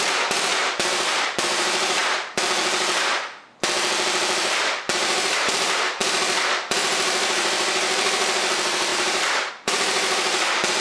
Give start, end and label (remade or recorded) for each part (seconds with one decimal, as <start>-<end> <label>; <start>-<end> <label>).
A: 0.0-2.0 remade; 2.0-4.4 recorded; 4.4-6.0 remade; 6.0-6.6 recorded; 6.6-10.8 remade